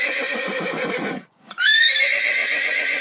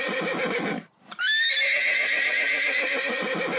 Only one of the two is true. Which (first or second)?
second